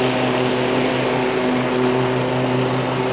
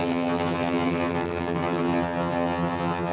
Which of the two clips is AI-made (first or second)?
second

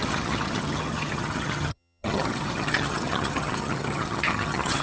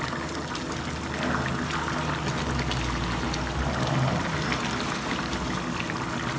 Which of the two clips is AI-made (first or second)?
first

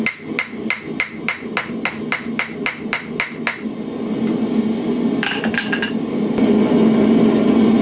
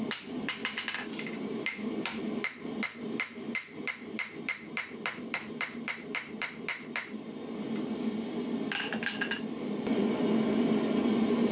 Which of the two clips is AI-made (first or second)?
second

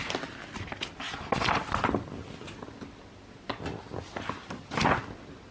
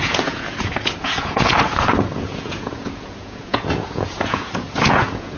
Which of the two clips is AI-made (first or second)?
second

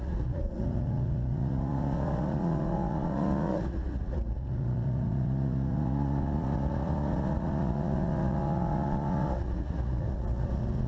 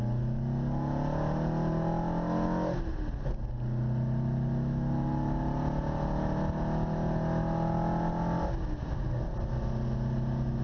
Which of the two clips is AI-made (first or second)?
first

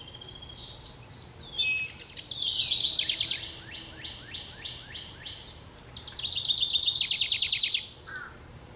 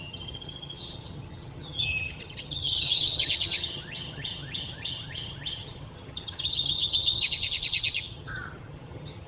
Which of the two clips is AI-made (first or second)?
second